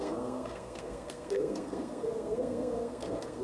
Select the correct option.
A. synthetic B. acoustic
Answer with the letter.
A